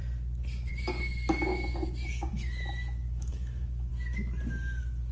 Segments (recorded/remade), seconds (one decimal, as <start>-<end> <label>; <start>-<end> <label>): 0.0-2.3 recorded; 2.3-3.9 remade; 3.9-5.1 recorded